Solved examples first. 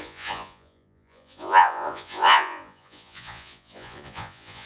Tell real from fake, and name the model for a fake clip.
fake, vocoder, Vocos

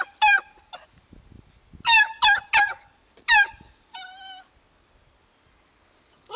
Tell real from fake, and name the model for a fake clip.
real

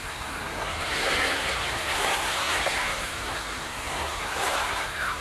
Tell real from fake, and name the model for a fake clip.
fake, codec, SNAC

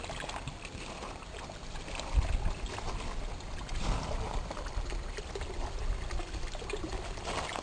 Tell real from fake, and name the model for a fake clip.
real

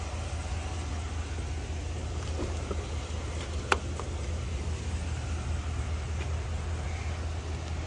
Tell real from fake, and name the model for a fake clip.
real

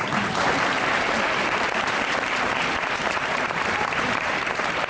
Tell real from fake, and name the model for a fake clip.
fake, vocoder, BigVGAN v2